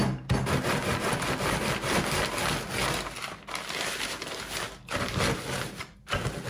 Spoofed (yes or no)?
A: no